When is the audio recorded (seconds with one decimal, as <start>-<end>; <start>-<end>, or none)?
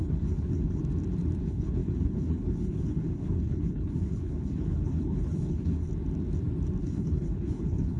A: 0.8-1.4; 5.9-6.8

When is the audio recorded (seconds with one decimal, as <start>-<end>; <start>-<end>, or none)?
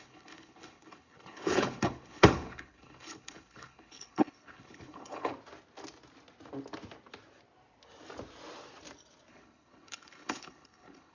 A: 5.3-9.3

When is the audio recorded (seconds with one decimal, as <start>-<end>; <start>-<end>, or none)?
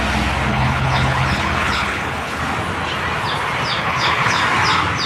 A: 0.0-0.5; 2.4-3.8; 4.4-5.1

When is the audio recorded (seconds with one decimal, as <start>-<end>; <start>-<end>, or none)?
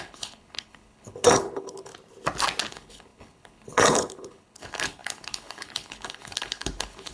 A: 1.9-2.7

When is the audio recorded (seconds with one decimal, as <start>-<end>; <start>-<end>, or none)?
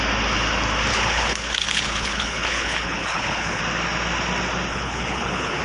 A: 0.0-0.9; 3.6-4.7